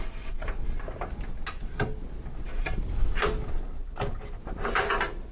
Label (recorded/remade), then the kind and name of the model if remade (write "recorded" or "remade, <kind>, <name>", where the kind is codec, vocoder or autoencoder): recorded